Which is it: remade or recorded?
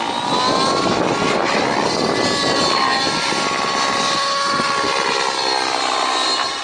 recorded